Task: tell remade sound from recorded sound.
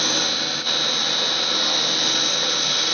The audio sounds recorded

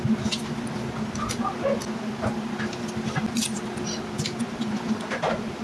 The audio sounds recorded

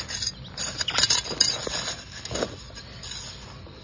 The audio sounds recorded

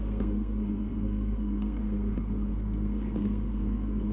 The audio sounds remade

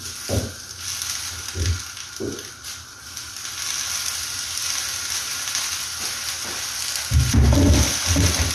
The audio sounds recorded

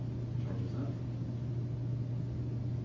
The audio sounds recorded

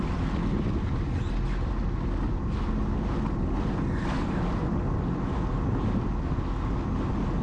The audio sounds recorded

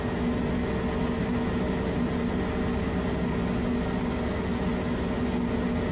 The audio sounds recorded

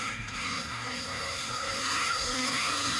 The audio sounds remade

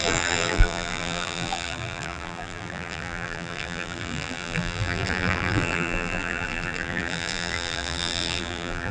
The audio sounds remade